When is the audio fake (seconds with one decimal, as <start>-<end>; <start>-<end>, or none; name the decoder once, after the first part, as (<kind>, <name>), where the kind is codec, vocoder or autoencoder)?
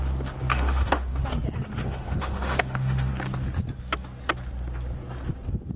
0.5-1.2 (autoencoder, DAC-VAE); 1.8-3.1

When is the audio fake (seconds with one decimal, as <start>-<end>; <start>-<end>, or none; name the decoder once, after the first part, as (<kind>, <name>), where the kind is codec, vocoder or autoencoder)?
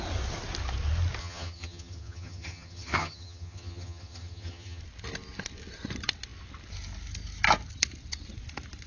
1.2-4.8 (vocoder, HiFi-GAN)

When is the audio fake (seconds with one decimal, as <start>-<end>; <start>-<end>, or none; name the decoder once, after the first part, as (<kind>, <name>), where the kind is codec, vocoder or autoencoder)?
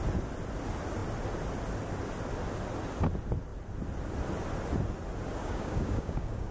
5.4-6.5 (codec, DAC)